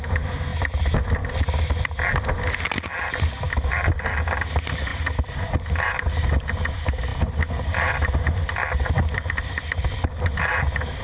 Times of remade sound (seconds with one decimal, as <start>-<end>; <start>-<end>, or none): none